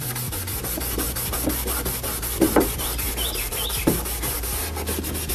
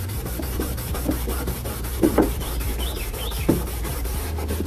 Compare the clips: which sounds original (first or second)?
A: first